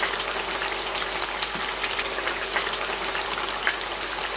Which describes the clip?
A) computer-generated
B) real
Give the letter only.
B